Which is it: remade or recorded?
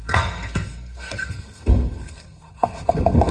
remade